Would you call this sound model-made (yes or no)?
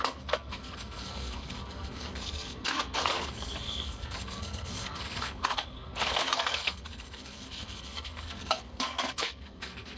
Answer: yes